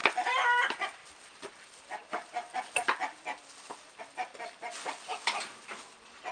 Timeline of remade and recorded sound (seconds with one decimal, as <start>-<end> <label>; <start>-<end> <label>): 0.0-6.3 recorded

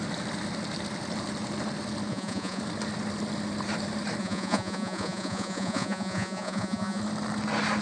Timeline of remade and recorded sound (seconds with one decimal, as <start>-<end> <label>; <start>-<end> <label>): 0.0-2.1 recorded; 2.1-2.6 remade; 2.6-4.2 recorded; 4.2-7.0 remade; 7.0-7.8 recorded

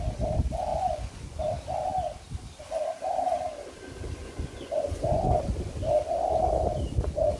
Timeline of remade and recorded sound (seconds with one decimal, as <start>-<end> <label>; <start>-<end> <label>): 0.0-0.7 recorded; 0.7-1.4 remade; 1.4-4.2 recorded; 4.2-5.4 remade; 5.4-7.4 recorded

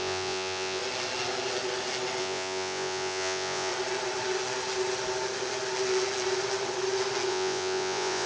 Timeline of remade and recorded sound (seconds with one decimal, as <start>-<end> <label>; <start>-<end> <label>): 0.0-0.8 remade; 0.8-2.2 recorded; 2.2-3.7 remade; 3.7-7.3 recorded; 7.3-8.3 remade